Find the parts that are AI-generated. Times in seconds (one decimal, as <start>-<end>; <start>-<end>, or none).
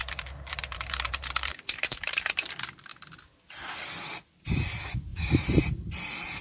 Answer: 0.0-2.1; 5.1-5.6